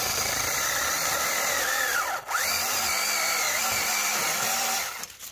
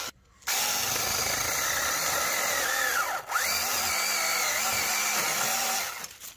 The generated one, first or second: first